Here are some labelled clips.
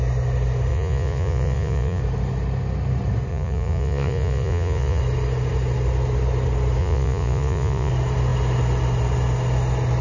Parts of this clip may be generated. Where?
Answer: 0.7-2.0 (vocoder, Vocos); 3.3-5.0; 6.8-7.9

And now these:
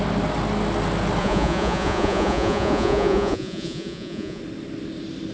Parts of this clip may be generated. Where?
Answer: 1.2-4.4 (vocoder, Vocos)

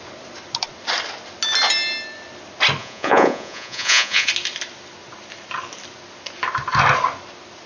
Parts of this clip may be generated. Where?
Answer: 2.8-4.3 (vocoder, Vocos)

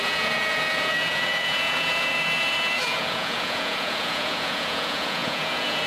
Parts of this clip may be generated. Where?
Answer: 0.0-5.9 (vocoder, Vocos)

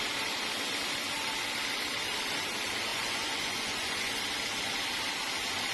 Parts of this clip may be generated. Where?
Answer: 2.9-4.2 (vocoder, Vocos)